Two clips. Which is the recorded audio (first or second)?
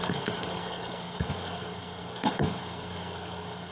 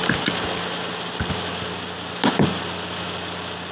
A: second